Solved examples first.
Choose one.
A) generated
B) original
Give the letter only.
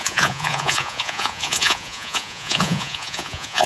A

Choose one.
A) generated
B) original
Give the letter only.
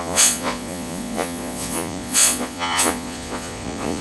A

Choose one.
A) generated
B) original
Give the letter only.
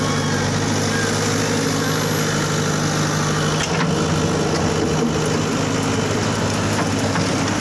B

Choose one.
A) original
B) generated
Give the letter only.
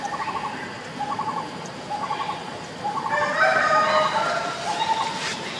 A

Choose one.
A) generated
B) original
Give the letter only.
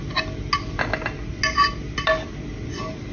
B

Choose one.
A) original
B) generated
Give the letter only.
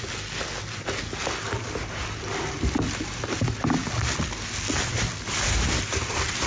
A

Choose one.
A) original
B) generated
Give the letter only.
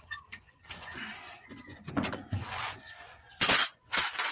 B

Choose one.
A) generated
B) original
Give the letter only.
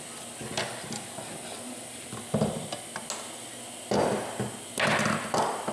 B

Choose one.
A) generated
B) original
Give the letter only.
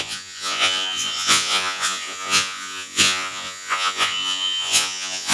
A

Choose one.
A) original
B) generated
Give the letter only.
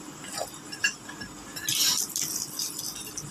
A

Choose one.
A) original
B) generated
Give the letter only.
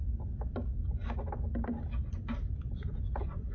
A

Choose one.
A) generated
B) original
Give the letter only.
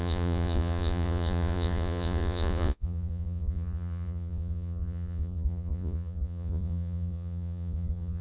A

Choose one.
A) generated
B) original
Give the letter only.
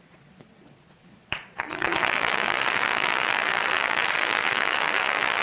A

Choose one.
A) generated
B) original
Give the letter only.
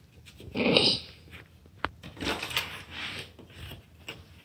B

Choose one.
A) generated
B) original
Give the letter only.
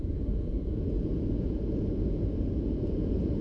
A